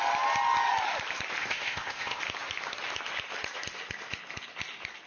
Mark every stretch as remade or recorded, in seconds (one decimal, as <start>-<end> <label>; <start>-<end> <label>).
0.0-1.4 recorded; 1.4-2.2 remade; 2.2-5.1 recorded